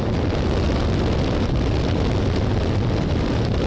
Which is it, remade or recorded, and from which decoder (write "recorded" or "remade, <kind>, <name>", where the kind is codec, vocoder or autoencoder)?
recorded